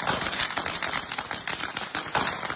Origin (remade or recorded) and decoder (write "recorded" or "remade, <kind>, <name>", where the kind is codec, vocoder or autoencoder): recorded